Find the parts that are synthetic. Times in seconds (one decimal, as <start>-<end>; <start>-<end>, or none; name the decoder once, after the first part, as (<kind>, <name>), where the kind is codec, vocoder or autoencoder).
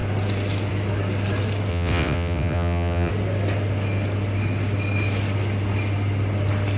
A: 1.7-3.1 (vocoder, WaveNeXt)